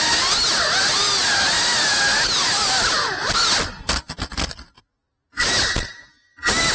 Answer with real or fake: real